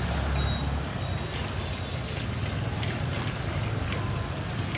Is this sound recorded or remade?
recorded